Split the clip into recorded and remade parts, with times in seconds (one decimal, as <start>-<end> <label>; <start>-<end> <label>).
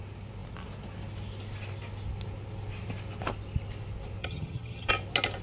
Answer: 0.0-4.2 recorded; 4.2-4.9 remade; 4.9-5.4 recorded